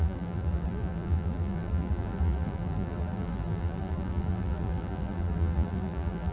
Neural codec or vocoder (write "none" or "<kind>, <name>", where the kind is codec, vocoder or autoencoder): vocoder, BigVGAN v2